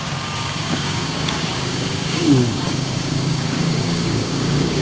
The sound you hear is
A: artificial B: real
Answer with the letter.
A